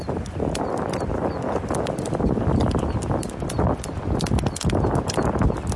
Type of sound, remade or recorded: recorded